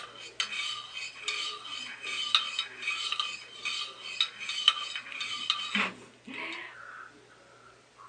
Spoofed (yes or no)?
no